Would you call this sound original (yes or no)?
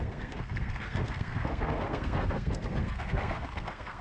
no